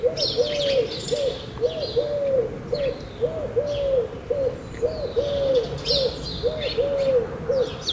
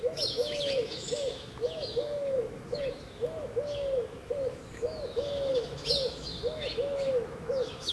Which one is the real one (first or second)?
first